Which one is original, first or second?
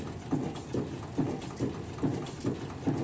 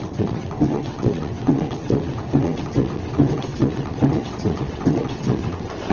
first